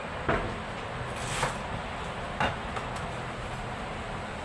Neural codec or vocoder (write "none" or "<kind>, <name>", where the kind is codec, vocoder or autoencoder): none